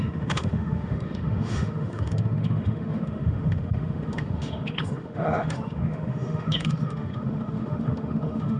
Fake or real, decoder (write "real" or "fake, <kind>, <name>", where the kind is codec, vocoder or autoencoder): fake, autoencoder, DAC-VAE